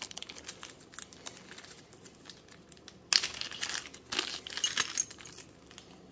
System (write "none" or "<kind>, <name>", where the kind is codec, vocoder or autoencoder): none